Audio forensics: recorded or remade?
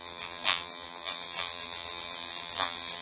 remade